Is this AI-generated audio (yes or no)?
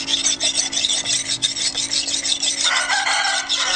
no